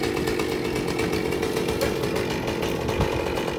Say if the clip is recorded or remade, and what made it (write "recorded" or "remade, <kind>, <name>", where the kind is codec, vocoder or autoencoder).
recorded